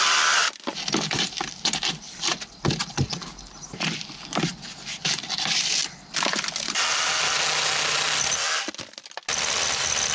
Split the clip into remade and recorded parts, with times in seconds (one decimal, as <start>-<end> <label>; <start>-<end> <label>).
0.0-5.8 remade; 5.8-9.5 recorded; 9.5-10.1 remade